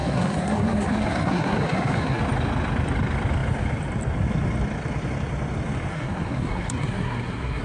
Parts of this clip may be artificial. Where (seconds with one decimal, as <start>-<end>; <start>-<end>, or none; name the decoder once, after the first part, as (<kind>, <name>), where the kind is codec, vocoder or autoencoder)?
0.0-2.2 (codec, SNAC); 5.9-7.6